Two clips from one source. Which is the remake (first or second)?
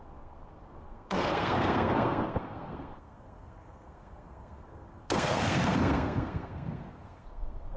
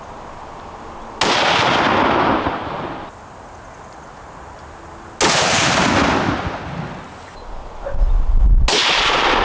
first